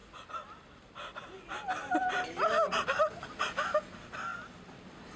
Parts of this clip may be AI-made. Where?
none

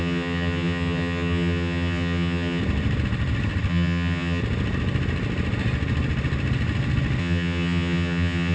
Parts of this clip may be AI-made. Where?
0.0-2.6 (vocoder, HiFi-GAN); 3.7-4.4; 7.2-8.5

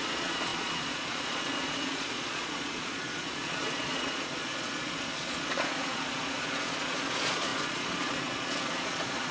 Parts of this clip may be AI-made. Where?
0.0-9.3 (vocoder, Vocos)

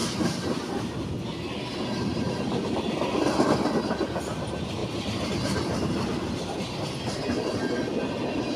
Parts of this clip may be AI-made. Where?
0.0-0.9 (vocoder, BigVGAN v2); 2.1-2.6; 4.8-7.2

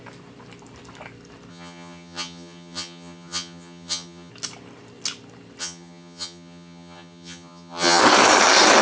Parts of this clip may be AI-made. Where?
1.5-4.3 (vocoder, HiFi-GAN); 5.6-8.0

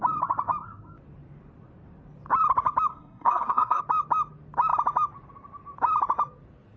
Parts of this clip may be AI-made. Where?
2.9-3.8 (codec, SNAC)

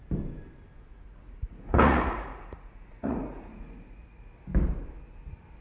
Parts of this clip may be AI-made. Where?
0.9-4.3 (vocoder, Vocos)